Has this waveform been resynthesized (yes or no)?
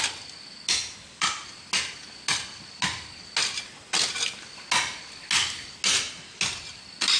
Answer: no